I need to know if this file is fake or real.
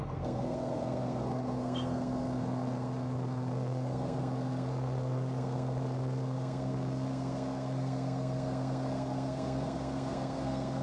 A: fake